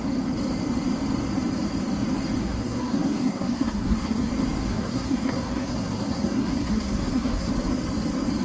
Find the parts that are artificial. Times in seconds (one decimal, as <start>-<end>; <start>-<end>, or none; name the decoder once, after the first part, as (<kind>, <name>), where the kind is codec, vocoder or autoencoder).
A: 2.4-4.3 (codec, SNAC); 4.7-7.5